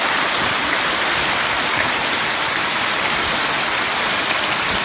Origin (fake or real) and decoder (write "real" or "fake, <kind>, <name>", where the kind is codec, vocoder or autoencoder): real